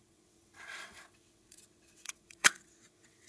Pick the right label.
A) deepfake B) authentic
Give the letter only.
A